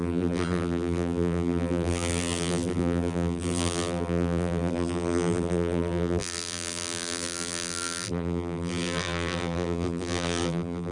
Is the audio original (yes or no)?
no